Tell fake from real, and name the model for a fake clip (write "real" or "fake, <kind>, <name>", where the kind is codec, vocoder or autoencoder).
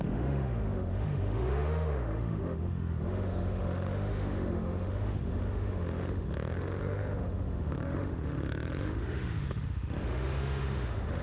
fake, autoencoder, DAC-VAE